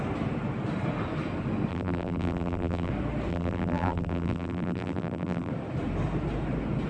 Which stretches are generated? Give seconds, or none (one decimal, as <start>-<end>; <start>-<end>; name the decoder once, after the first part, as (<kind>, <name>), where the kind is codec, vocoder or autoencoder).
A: 1.7-2.9 (vocoder, BigVGAN v2); 3.3-5.5